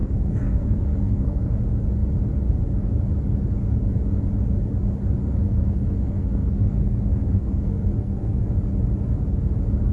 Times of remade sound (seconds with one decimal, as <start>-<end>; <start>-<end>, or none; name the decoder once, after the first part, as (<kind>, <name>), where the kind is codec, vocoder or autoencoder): 0.0-1.6 (codec, SNAC); 5.2-8.5